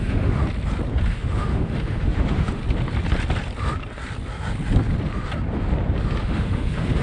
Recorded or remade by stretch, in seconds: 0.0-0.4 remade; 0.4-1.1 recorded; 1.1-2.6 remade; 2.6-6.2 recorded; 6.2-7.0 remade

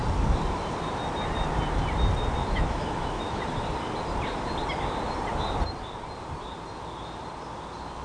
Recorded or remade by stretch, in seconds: 0.0-2.4 recorded; 2.4-3.4 remade; 3.4-8.0 recorded

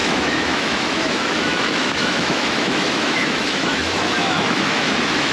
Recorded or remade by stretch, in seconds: 0.0-5.3 remade

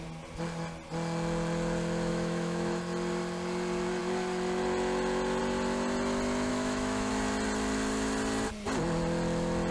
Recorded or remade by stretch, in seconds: 0.0-2.1 recorded; 2.1-2.8 remade; 2.8-6.5 recorded; 6.5-7.1 remade; 7.1-9.7 recorded

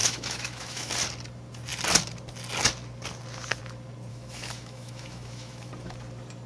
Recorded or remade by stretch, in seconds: 0.0-0.9 remade; 0.9-4.1 recorded; 4.1-5.7 remade; 5.7-6.5 recorded